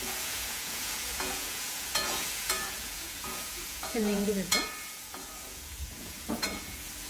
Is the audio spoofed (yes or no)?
yes